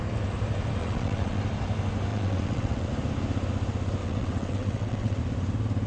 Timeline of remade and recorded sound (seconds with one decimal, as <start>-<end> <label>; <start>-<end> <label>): 0.0-0.8 recorded; 0.8-1.4 remade; 1.4-2.1 recorded; 2.1-2.9 remade; 2.9-4.0 recorded; 4.0-5.2 remade; 5.2-5.9 recorded